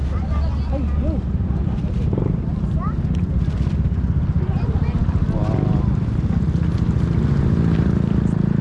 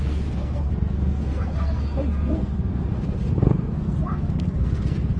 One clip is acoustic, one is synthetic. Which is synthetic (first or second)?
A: second